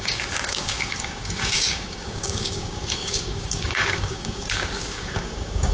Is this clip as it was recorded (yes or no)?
no